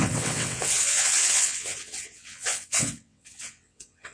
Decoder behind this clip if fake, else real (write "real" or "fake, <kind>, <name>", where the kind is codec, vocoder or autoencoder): fake, vocoder, WaveNeXt